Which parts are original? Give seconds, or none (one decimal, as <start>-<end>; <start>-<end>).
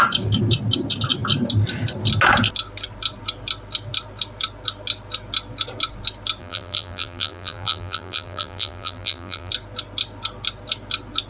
0.0-6.4; 9.5-11.3